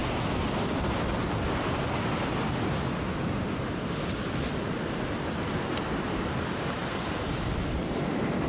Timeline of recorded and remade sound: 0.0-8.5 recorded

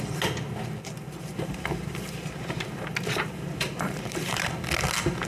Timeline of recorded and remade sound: 0.0-1.3 recorded; 1.3-4.5 remade; 4.5-5.3 recorded